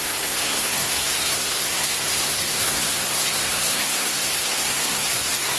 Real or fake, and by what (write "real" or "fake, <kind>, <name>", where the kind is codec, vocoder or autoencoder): fake, codec, SNAC